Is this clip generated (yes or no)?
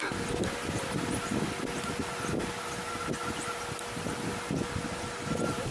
no